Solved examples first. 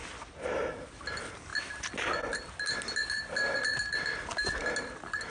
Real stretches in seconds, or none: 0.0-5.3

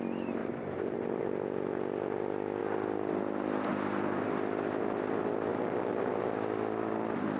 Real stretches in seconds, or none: 0.0-0.4; 1.2-2.6; 3.7-5.5; 6.2-7.4

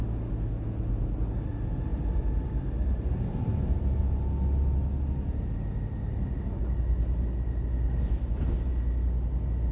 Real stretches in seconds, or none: 0.0-1.9; 4.0-9.7

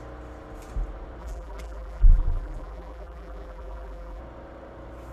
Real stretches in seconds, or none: 0.0-1.2; 4.2-5.1

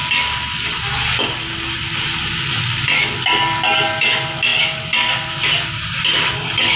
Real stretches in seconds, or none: 0.0-6.8

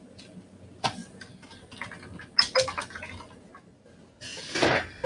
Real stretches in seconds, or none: 0.0-5.1

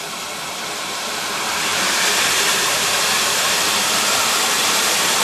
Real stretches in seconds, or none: none